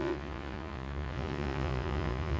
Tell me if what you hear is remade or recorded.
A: remade